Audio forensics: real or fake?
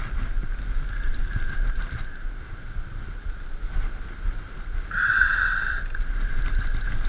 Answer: real